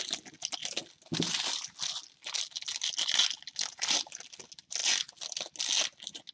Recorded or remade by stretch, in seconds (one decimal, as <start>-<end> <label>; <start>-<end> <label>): 0.0-6.3 recorded